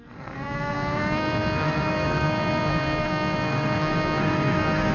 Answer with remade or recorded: remade